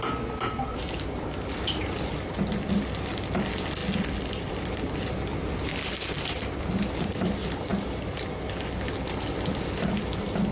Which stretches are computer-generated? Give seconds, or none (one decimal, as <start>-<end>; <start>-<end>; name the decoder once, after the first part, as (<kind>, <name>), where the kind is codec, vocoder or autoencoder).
none

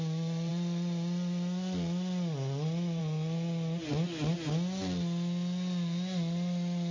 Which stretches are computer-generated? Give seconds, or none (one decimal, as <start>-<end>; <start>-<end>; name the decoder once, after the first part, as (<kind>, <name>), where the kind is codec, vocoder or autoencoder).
none

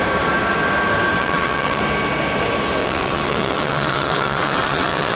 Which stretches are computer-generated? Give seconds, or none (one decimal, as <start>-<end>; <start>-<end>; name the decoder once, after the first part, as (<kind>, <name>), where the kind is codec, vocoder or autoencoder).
1.2-1.8 (vocoder, WaveNeXt); 2.8-5.2